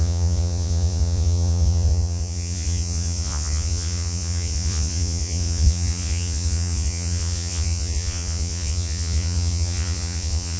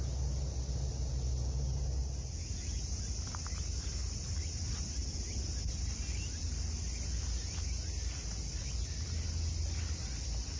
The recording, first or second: second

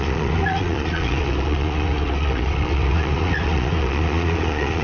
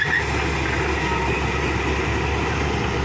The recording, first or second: second